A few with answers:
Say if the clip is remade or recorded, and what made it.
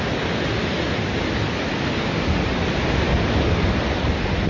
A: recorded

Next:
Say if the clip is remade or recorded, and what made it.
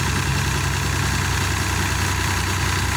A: recorded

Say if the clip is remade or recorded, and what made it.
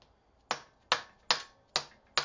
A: recorded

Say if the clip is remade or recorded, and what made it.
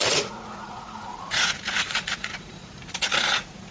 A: remade, vocoder, Vocos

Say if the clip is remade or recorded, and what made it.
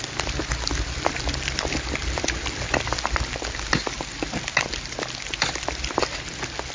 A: recorded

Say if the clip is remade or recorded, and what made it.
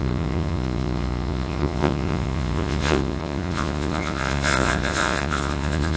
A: remade, vocoder, Vocos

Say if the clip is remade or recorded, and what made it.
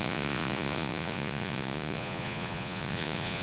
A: remade, vocoder, Vocos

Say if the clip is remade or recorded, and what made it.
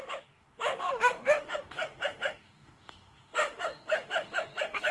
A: remade, autoencoder, DAC-VAE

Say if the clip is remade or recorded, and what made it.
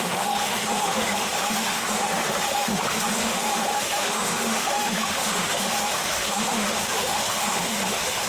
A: remade, autoencoder, DAC-VAE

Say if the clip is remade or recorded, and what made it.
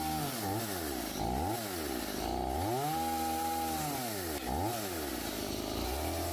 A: recorded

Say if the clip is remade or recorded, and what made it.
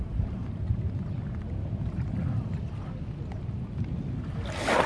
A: recorded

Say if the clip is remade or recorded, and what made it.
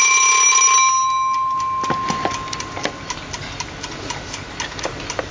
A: recorded